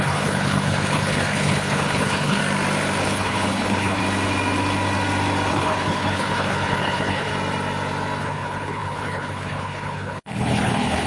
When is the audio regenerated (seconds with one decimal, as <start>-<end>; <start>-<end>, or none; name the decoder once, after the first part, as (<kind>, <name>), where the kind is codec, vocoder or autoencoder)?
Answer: 0.0-2.4 (codec, HILCodec); 3.0-4.0; 5.5-7.3; 8.2-11.1

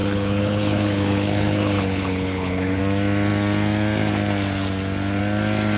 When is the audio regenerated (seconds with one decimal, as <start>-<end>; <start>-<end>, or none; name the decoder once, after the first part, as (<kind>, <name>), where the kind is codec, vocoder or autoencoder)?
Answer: 0.0-2.8 (codec, HILCodec)

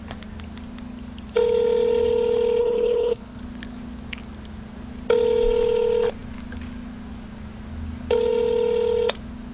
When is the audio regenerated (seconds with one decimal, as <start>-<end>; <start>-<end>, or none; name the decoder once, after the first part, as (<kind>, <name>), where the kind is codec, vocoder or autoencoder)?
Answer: 2.6-3.4 (codec, HILCodec)

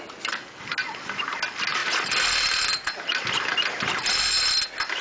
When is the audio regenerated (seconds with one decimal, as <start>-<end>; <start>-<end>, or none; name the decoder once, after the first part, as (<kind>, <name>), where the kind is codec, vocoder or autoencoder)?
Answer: none

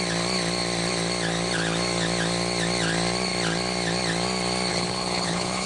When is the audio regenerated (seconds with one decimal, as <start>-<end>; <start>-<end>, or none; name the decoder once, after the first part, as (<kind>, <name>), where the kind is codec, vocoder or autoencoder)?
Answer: 4.7-5.7 (codec, HILCodec)